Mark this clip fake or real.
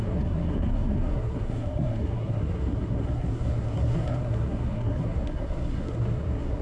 fake